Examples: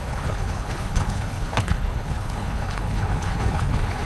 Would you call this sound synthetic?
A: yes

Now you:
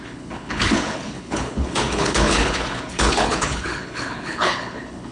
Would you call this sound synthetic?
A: yes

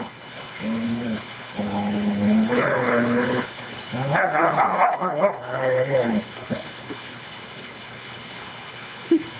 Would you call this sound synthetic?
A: yes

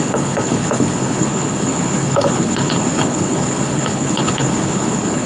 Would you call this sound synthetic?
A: yes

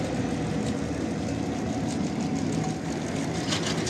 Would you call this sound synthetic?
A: no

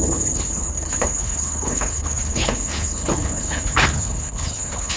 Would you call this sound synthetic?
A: yes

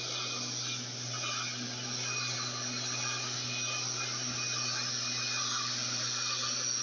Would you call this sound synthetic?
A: no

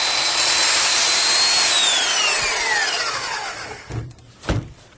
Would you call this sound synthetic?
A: no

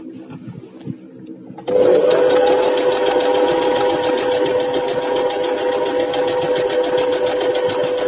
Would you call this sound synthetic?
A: no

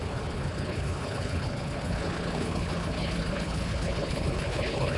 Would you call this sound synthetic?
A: yes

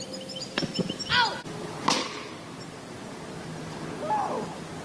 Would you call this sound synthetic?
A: no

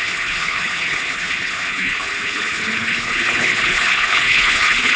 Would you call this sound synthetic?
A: yes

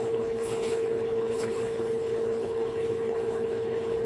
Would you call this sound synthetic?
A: yes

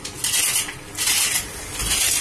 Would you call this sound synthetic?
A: no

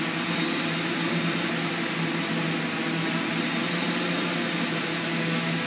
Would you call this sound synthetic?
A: no